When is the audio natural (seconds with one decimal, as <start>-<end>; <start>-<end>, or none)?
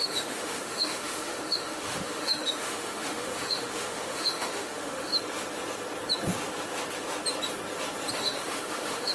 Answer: 5.1-8.1